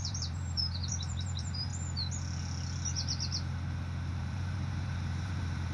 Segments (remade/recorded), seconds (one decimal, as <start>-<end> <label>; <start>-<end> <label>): 0.0-1.7 remade; 1.7-4.1 recorded; 4.1-5.7 remade